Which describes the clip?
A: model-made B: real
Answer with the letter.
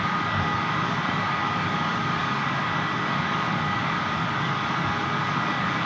A